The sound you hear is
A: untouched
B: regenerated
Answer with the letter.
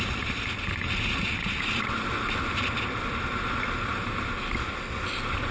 A